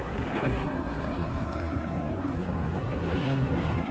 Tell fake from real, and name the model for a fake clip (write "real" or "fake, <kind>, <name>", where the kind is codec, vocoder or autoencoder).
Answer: fake, codec, SNAC